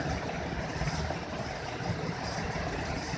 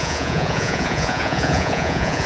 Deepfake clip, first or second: second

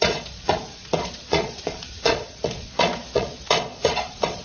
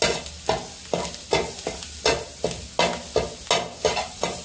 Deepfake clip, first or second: first